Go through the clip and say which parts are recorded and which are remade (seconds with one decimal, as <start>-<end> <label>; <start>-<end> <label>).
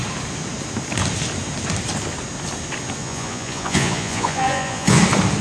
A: 0.0-3.0 recorded; 3.0-5.0 remade; 5.0-5.4 recorded